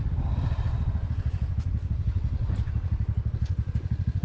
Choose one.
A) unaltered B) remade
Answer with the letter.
A